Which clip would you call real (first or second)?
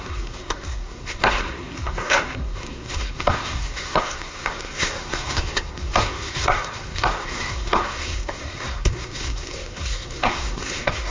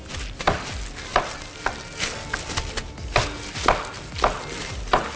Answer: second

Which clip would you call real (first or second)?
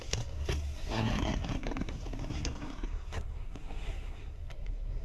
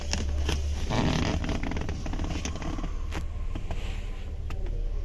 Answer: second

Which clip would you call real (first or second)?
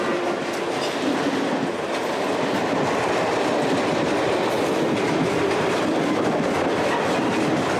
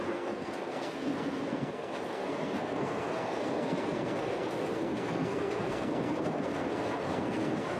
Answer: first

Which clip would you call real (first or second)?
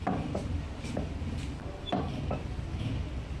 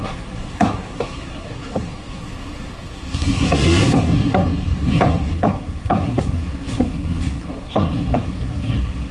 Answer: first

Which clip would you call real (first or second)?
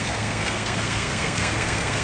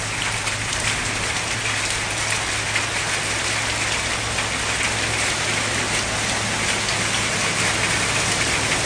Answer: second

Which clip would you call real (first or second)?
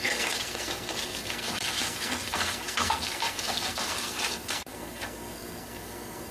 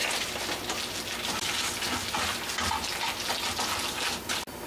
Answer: second